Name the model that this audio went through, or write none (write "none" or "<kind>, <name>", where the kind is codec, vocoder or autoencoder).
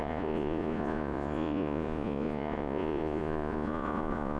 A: vocoder, Vocos